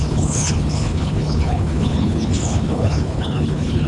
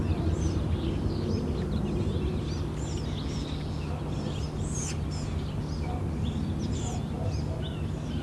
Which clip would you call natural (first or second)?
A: second